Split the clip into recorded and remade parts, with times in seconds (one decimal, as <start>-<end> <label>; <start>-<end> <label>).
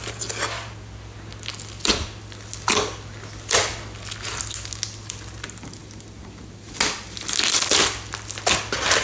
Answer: 0.0-9.0 recorded